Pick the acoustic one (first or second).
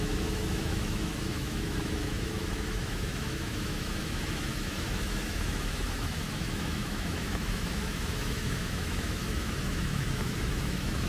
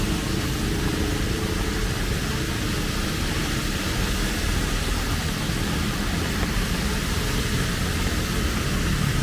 second